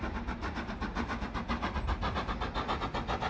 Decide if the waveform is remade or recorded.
recorded